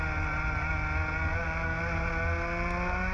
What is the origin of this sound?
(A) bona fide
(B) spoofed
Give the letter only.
A